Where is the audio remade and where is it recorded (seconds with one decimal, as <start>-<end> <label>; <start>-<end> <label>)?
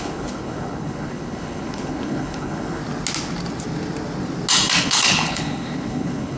0.0-2.8 remade; 2.8-4.8 recorded; 4.8-6.4 remade